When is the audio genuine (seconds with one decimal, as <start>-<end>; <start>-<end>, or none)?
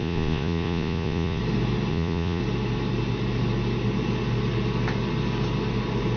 1.4-1.9; 2.4-6.2